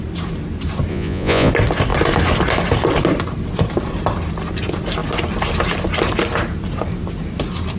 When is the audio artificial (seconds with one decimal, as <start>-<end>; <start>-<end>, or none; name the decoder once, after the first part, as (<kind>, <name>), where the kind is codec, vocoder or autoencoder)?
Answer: 0.9-1.5 (vocoder, Vocos)